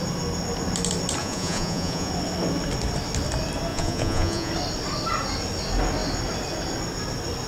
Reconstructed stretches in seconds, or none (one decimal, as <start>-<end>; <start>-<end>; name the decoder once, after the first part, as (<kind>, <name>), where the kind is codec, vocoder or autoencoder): 1.2-2.1 (vocoder, Vocos); 3.7-4.5